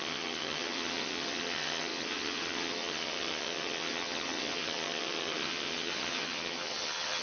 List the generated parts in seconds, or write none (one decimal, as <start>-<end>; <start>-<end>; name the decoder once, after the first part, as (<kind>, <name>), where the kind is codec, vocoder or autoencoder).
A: 0.0-7.2 (vocoder, HiFi-GAN)